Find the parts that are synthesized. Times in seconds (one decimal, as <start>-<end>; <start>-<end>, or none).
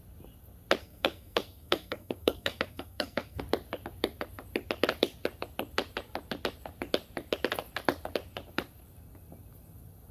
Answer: 0.8-3.4